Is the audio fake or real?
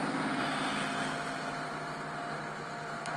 real